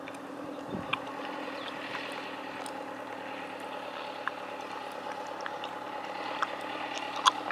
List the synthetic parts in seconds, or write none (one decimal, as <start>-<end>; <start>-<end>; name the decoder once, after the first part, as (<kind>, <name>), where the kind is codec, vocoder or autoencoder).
none